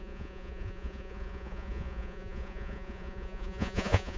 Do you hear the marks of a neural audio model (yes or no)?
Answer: yes